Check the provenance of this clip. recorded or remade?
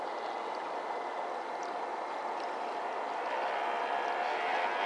recorded